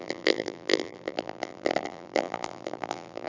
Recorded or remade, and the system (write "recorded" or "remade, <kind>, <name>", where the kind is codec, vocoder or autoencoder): remade, vocoder, BigVGAN v2